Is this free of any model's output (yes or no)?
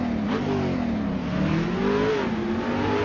yes